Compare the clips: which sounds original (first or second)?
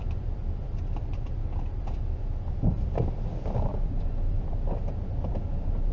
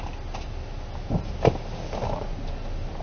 second